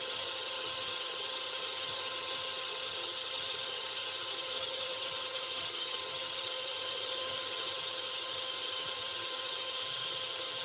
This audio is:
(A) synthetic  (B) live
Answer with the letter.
A